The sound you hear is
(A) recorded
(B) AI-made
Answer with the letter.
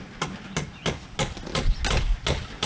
A